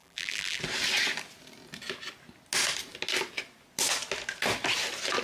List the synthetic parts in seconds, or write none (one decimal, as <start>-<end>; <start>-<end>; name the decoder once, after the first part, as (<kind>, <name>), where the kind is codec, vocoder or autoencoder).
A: 0.0-0.6 (vocoder, BigVGAN v2)

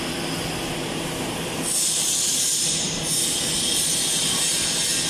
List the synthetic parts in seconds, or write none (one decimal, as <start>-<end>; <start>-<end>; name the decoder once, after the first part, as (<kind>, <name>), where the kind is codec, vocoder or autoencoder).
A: 0.9-3.9 (vocoder, BigVGAN v2)

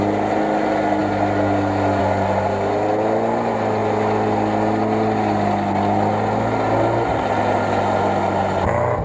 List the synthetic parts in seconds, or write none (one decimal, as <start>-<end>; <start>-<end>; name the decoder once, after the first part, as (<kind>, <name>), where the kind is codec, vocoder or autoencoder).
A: none

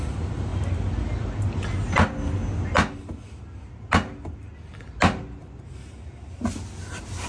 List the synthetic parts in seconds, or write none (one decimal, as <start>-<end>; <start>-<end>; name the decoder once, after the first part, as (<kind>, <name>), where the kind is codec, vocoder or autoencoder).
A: none